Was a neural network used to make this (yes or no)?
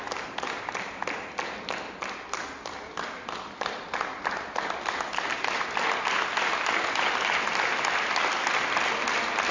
no